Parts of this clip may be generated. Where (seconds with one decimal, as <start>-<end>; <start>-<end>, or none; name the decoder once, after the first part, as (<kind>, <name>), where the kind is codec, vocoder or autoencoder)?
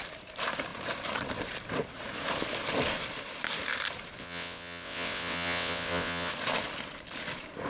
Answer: 4.2-6.3 (vocoder, WaveNeXt)